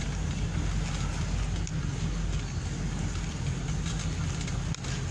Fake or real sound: real